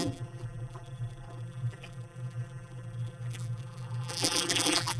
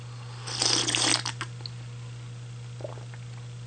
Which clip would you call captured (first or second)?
second